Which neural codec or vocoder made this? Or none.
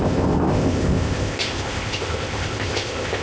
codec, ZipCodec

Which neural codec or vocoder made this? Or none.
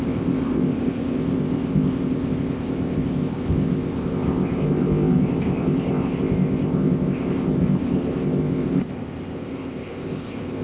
codec, ZipCodec